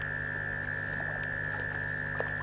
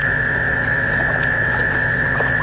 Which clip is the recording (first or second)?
first